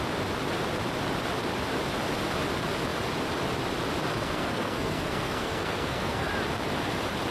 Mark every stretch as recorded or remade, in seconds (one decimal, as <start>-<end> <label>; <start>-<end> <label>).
0.0-4.1 recorded; 4.1-6.3 remade; 6.3-7.3 recorded